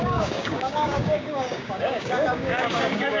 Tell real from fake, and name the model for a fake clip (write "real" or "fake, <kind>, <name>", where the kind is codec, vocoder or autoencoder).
fake, codec, DAC